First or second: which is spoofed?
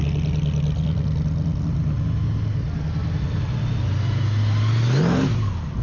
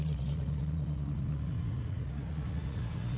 second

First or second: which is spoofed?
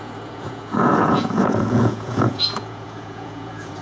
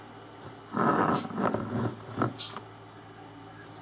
first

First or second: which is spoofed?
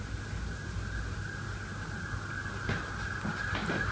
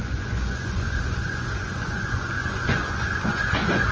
second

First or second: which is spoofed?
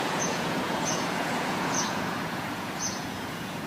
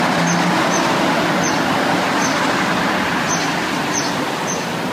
first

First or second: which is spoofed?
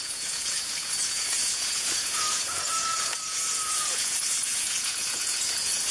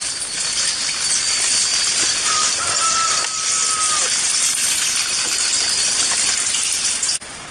first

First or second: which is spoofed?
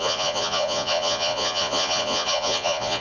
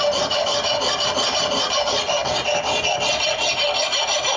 first